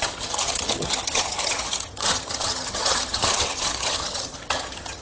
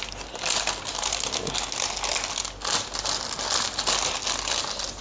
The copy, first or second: first